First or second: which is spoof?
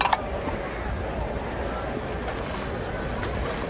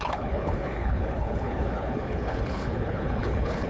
second